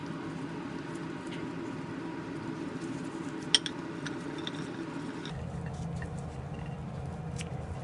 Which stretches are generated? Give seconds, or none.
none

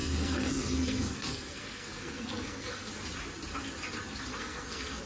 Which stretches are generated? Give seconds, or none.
0.0-2.9 (codec, SNAC); 4.3-5.1

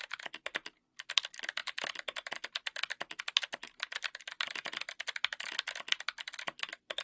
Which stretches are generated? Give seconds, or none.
none

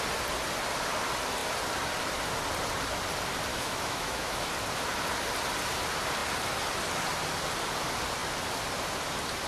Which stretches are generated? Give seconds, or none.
3.5-4.5 (autoencoder, DAC-VAE)

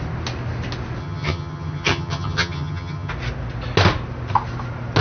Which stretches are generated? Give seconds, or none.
1.0-3.1 (vocoder, HiFi-GAN)